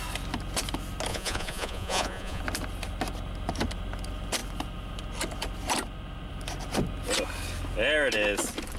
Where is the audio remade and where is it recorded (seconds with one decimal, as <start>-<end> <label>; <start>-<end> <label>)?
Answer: 0.0-1.1 recorded; 1.1-2.4 remade; 2.4-8.8 recorded